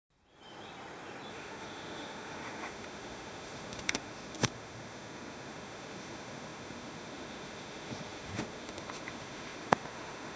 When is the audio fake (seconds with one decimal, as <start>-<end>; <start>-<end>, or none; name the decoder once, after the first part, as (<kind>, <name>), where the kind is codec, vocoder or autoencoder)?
1.3-10.4 (autoencoder, DAC-VAE)